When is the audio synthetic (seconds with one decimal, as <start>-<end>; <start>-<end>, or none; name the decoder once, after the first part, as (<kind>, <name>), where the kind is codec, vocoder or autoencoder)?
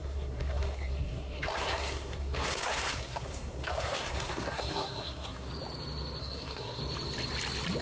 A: 0.0-5.5 (codec, SNAC); 6.2-6.8